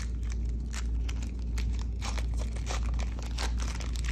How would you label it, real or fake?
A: real